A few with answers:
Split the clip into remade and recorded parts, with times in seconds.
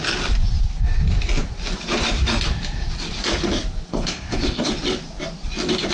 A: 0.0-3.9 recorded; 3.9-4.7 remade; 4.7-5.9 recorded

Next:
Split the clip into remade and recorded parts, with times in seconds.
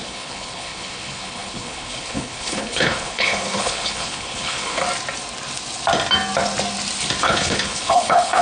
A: 0.0-4.8 remade; 4.8-7.2 recorded; 7.2-8.4 remade